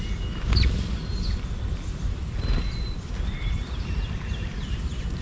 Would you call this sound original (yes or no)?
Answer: yes